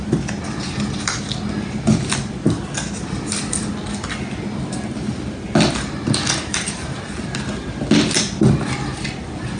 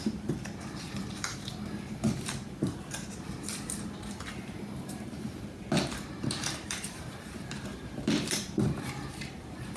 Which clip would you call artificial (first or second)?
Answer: second